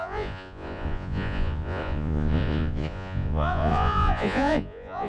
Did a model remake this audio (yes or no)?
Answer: yes